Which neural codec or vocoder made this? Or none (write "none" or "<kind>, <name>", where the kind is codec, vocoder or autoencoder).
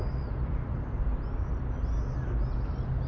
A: none